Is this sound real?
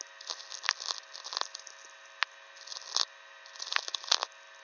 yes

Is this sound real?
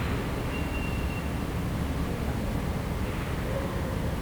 yes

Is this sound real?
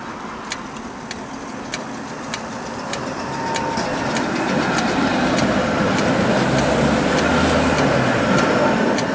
yes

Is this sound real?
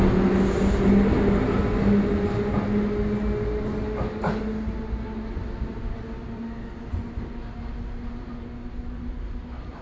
yes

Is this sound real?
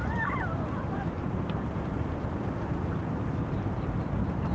no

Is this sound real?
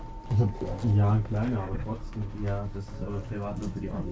yes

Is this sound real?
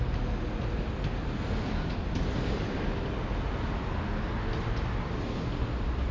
yes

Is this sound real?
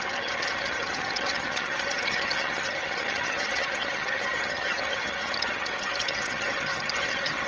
no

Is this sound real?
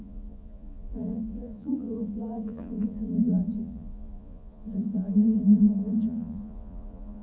no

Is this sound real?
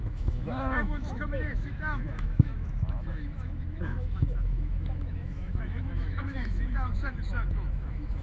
no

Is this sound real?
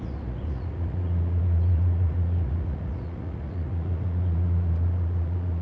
no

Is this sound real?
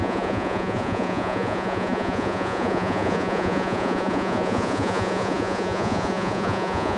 no